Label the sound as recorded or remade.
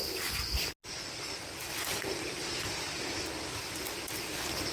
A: recorded